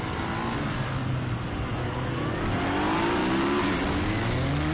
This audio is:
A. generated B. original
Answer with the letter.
B